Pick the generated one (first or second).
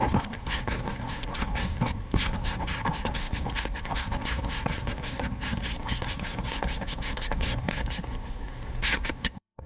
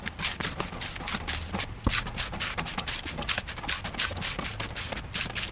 first